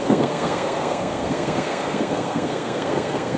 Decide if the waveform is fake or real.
fake